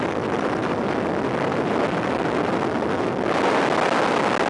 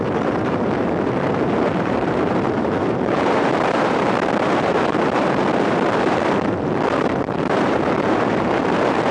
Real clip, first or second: first